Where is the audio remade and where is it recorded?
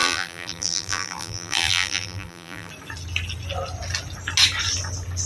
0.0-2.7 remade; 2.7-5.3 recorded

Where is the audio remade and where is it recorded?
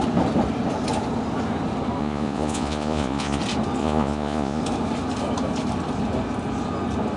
0.0-2.0 recorded; 2.0-3.4 remade; 3.4-3.8 recorded; 3.8-4.6 remade; 4.6-7.2 recorded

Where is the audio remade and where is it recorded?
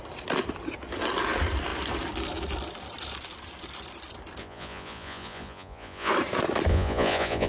0.0-4.4 recorded; 4.4-6.1 remade; 6.1-6.7 recorded; 6.7-7.5 remade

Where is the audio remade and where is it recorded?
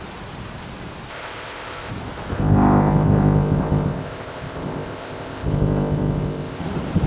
0.0-1.1 recorded; 1.1-1.9 remade; 1.9-2.3 recorded; 2.3-6.6 remade; 6.6-7.1 recorded